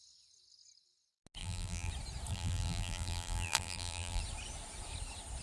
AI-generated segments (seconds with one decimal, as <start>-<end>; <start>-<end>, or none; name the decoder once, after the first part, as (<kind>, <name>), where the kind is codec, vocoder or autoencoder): 1.4-1.9 (vocoder, BigVGAN v2); 2.3-4.2